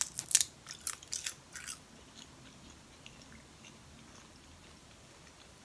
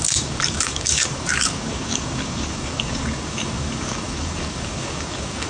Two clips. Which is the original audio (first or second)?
first